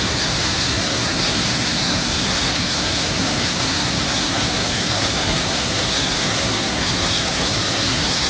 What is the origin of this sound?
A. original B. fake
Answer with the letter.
B